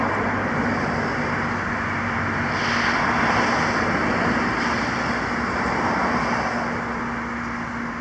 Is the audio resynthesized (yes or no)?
no